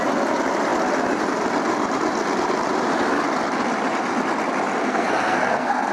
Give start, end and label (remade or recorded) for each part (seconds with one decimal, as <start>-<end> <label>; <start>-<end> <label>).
0.0-4.8 recorded; 4.8-5.9 remade